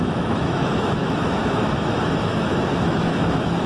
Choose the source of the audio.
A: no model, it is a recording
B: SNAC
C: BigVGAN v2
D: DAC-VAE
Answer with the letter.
D